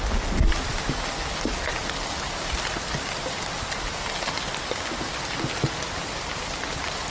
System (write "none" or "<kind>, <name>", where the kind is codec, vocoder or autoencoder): none